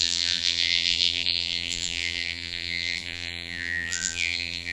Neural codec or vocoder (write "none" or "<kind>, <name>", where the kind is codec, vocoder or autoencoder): vocoder, BigVGAN v2